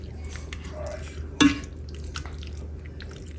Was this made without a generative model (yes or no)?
yes